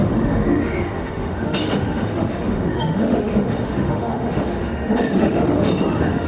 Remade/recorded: remade